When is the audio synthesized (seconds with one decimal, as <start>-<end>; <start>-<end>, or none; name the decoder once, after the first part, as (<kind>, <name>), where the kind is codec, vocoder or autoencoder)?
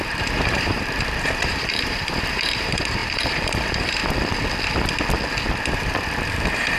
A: 0.0-4.0 (vocoder, BigVGAN v2); 5.6-6.8